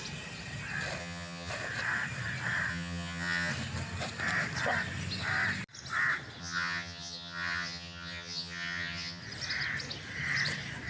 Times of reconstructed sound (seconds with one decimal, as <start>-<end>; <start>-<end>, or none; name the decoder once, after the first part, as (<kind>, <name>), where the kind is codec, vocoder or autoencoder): 1.0-1.5 (vocoder, HiFi-GAN); 2.7-3.5; 6.4-9.2